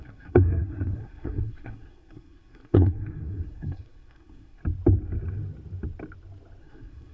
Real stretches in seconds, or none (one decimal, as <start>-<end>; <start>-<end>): 4.6-6.6